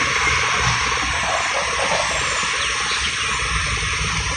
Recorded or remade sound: recorded